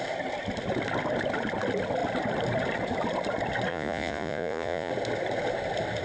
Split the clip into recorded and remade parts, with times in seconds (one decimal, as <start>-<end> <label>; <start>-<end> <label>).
0.0-3.7 recorded; 3.7-4.9 remade; 4.9-6.0 recorded